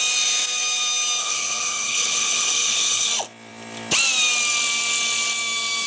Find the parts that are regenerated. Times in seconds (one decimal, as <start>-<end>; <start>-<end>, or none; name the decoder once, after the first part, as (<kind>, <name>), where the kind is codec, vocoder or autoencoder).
1.2-3.1 (codec, HILCodec)